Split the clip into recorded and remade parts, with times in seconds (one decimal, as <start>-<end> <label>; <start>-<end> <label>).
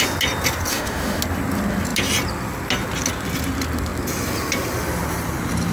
0.0-0.7 recorded; 0.7-1.2 remade; 1.2-5.7 recorded